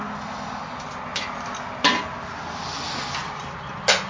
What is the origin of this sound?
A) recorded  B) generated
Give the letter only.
A